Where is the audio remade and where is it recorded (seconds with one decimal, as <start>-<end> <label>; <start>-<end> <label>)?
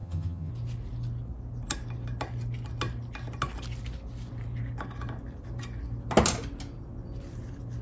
0.0-0.5 remade; 0.5-7.8 recorded